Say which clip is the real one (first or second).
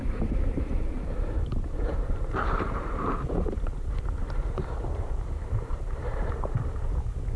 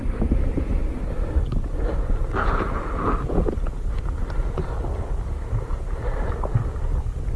second